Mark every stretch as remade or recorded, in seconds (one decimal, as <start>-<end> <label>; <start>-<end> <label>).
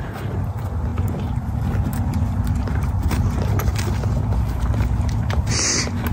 0.0-6.1 recorded